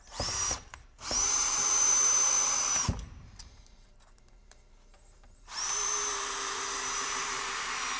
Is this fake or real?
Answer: fake